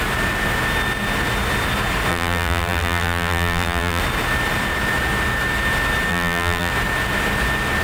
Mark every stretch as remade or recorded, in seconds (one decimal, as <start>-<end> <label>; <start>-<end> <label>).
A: 0.0-2.1 recorded; 2.1-4.0 remade; 4.0-6.1 recorded; 6.1-6.7 remade; 6.7-7.8 recorded